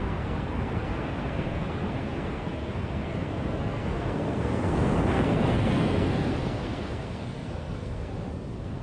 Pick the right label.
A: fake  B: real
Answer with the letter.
A